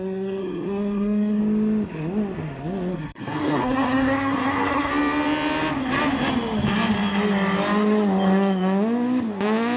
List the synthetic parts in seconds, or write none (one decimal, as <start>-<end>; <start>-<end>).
0.0-1.4; 2.9-4.9